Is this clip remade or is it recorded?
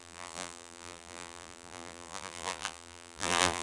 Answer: remade